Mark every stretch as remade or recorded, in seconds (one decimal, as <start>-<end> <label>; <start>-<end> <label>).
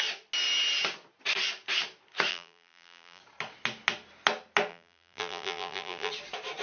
0.0-2.3 recorded; 2.3-3.2 remade; 3.2-4.7 recorded; 4.7-6.1 remade; 6.1-6.6 recorded